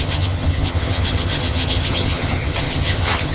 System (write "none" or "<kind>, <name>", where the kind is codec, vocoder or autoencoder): vocoder, HiFi-GAN